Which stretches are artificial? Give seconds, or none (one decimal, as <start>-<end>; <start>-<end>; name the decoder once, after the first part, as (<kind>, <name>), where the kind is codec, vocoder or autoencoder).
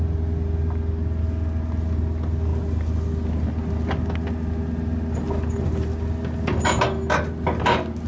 none